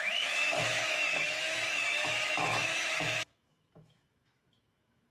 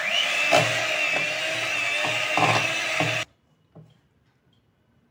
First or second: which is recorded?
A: second